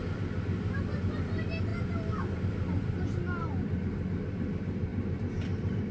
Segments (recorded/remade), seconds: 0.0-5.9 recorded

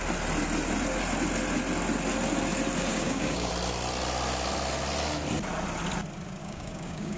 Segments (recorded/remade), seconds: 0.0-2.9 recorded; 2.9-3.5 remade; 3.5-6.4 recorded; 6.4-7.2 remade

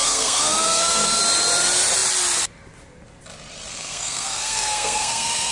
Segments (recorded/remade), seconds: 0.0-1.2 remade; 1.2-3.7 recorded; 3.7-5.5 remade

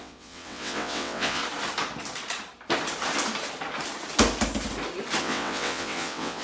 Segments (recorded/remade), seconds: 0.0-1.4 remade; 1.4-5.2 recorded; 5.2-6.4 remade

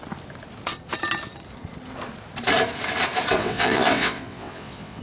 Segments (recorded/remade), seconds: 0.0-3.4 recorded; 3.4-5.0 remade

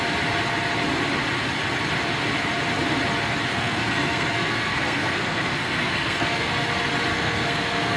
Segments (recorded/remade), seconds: 0.0-3.5 recorded; 3.5-6.5 remade; 6.5-7.1 recorded; 7.1-8.0 remade

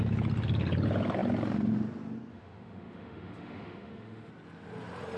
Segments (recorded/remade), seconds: 0.0-2.3 recorded; 2.3-4.3 remade; 4.3-5.2 recorded

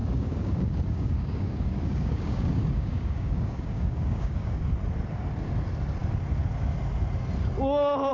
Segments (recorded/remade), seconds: 0.0-4.6 remade; 4.6-8.1 recorded